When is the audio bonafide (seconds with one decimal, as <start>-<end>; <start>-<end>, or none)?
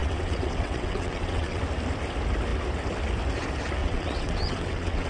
1.6-3.8